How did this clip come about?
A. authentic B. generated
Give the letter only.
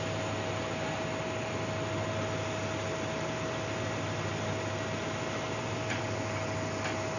A